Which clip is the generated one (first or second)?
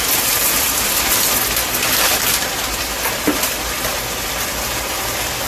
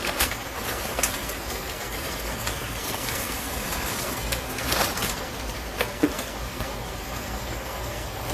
second